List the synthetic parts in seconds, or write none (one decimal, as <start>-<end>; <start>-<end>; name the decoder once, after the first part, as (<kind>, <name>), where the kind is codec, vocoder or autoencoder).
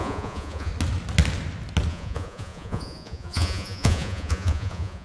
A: 0.0-0.7 (vocoder, Vocos); 1.9-5.0